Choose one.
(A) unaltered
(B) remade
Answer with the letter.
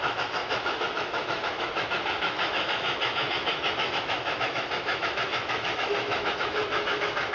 B